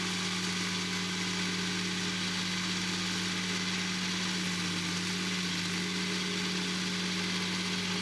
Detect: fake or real real